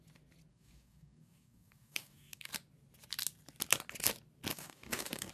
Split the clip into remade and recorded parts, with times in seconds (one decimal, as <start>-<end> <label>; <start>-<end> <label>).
0.0-0.5 recorded; 0.5-2.5 remade; 2.5-4.5 recorded; 4.5-5.3 remade